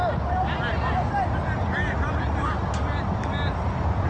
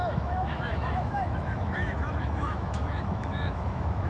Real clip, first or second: first